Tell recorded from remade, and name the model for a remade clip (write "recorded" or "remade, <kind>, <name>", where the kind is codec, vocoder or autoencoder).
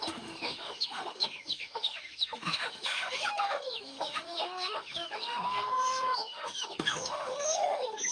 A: remade, autoencoder, DAC-VAE